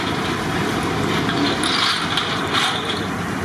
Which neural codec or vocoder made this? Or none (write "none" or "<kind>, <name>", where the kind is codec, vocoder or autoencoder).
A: vocoder, BigVGAN v2